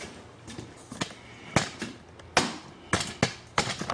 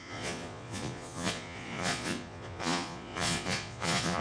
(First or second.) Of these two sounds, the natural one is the first